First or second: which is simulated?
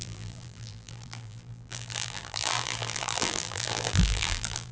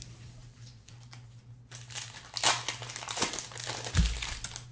first